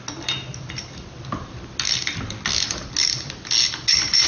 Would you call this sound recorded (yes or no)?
yes